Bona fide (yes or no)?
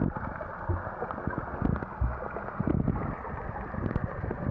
yes